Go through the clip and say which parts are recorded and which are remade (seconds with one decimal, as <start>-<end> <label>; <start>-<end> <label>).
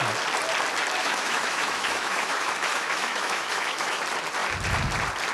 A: 0.0-1.0 recorded; 1.0-4.0 remade; 4.0-5.3 recorded